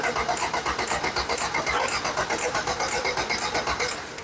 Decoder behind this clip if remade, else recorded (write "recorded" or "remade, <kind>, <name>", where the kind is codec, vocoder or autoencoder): recorded